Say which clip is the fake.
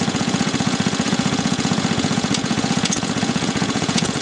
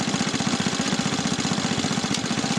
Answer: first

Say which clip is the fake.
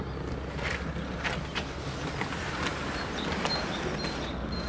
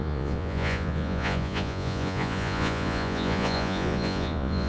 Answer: second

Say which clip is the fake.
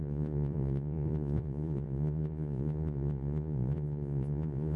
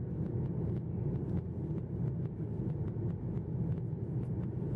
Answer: first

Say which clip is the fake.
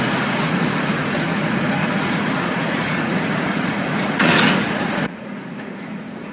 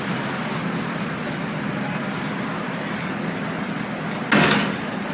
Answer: first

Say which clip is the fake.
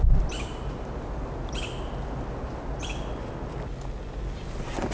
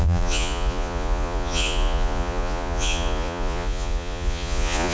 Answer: second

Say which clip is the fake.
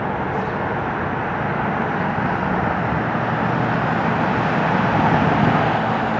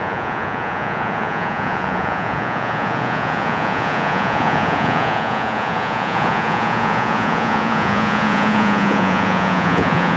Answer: second